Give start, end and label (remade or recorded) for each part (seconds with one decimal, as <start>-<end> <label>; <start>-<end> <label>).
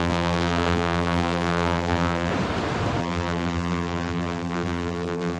0.0-2.3 remade; 2.3-3.0 recorded; 3.0-5.4 remade